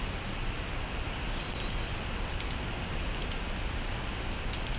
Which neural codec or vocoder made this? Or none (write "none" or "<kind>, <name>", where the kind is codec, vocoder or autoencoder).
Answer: none